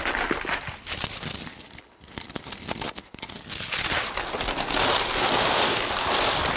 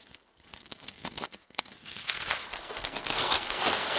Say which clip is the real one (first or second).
first